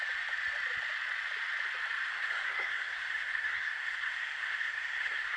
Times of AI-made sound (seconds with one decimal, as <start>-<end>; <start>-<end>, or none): 2.1-5.4

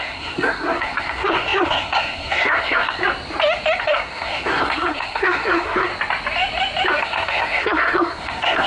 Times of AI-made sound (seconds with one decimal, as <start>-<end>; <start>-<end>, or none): 0.0-3.0; 3.8-5.9; 7.0-8.7

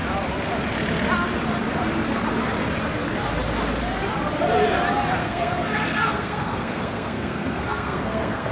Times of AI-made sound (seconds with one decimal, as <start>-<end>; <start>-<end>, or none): 5.2-8.5

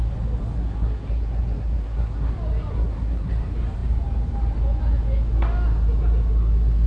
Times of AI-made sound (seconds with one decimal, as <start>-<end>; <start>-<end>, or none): 0.5-2.3; 2.7-3.3

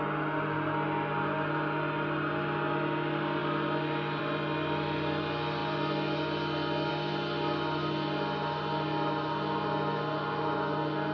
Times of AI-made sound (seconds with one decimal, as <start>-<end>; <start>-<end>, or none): none